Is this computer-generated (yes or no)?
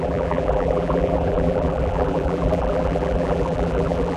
yes